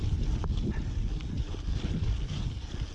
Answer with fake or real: real